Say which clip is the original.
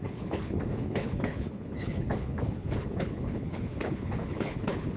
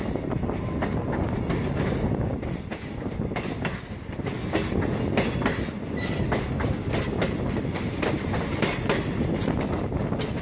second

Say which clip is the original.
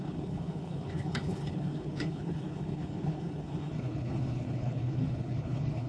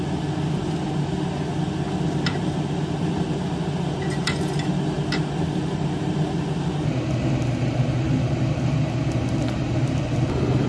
second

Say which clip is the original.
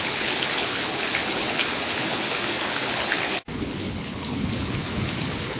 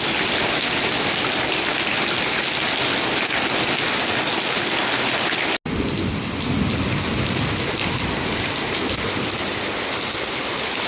second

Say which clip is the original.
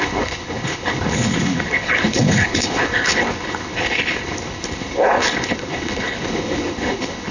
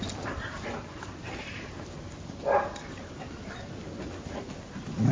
second